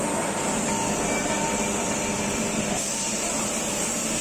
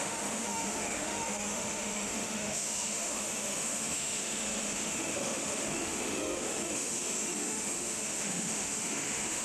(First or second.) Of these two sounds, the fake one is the second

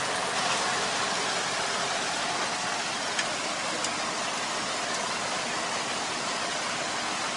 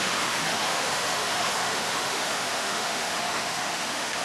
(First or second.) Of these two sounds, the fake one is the second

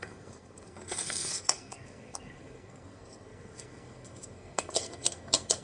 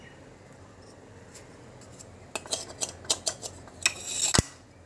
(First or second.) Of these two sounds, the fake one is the first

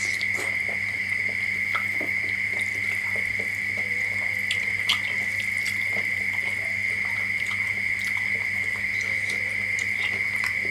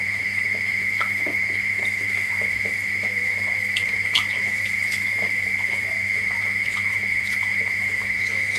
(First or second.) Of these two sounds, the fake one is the second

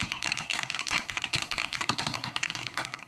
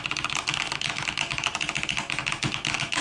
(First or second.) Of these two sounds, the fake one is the first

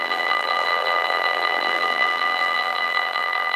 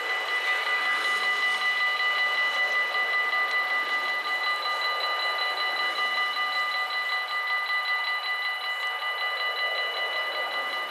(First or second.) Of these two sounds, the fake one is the first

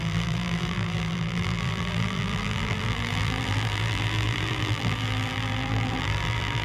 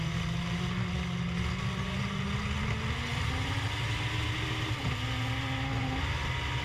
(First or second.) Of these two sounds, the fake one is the first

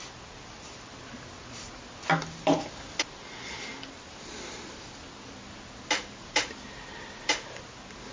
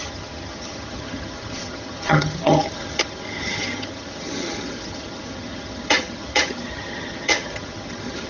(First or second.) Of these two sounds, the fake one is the second